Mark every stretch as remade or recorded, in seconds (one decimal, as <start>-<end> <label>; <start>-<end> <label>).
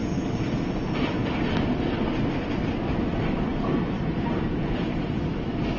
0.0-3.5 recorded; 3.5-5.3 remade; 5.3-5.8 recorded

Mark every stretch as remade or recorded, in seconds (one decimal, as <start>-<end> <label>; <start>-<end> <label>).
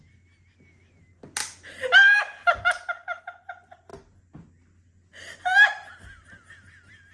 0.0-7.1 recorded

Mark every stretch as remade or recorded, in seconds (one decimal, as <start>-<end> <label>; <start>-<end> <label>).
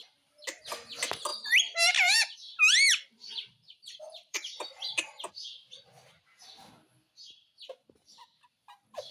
0.0-1.3 recorded; 1.3-5.3 remade; 5.3-9.1 recorded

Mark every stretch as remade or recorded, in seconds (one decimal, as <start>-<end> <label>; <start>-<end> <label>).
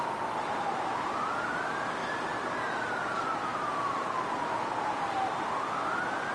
0.0-3.5 recorded; 3.5-4.4 remade; 4.4-6.3 recorded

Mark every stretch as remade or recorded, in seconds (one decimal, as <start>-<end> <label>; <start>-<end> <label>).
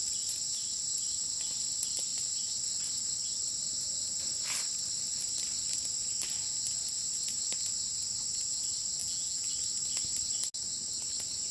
0.0-9.0 recorded; 9.0-9.5 remade; 9.5-11.5 recorded